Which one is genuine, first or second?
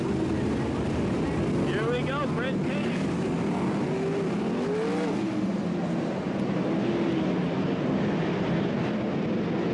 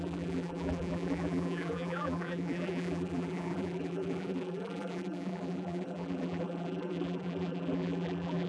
first